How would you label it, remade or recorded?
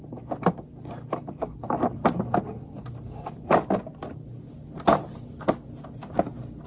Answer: recorded